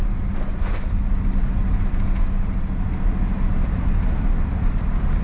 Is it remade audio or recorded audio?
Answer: recorded